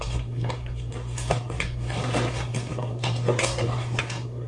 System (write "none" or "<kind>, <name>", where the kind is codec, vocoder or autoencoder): codec, SNAC